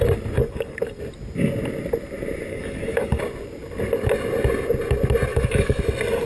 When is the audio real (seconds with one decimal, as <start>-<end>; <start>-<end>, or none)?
0.0-0.4; 1.0-2.5; 3.2-5.3; 5.8-6.3